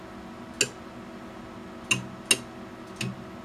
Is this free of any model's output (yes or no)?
yes